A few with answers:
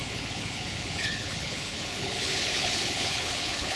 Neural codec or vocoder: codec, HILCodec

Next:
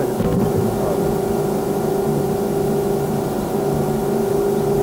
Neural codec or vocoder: none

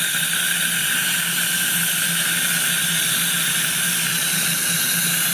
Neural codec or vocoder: none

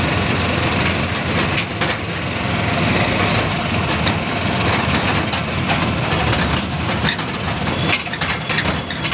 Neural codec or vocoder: none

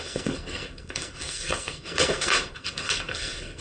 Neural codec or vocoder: codec, SNAC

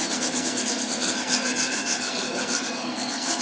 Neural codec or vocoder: codec, SNAC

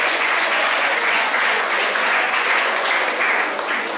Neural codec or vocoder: vocoder, Vocos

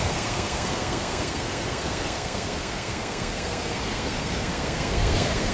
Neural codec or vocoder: codec, SNAC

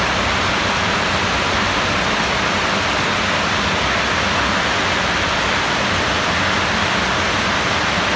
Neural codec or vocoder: none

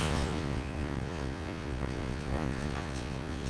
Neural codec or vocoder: vocoder, Vocos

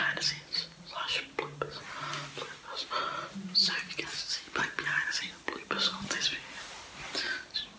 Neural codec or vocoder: none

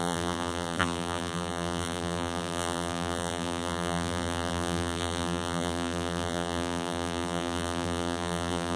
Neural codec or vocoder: vocoder, BigVGAN v2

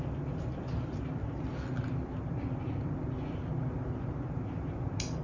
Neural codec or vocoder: none